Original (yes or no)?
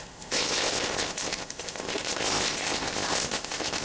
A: no